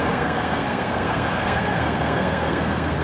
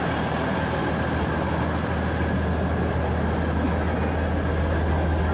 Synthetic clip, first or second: first